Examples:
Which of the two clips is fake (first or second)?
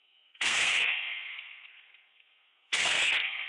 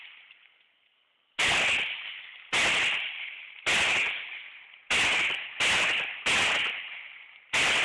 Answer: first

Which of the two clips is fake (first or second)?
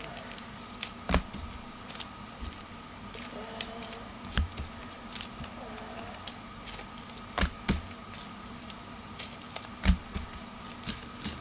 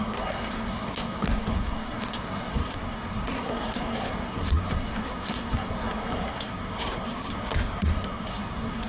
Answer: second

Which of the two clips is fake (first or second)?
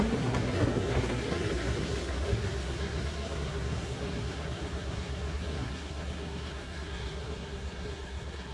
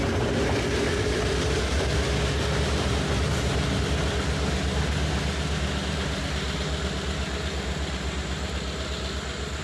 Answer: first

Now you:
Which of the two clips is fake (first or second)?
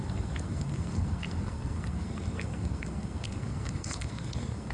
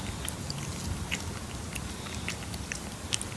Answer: first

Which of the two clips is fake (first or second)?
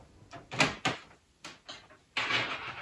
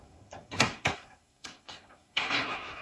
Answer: second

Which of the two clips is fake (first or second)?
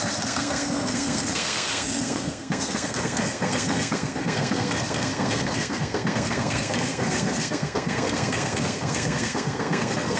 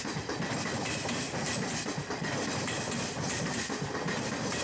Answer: first